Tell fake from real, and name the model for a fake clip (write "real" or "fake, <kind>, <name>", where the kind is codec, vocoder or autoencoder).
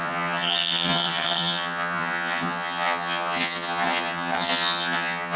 fake, vocoder, HiFi-GAN